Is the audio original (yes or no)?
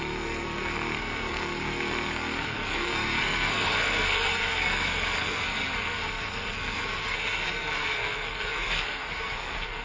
no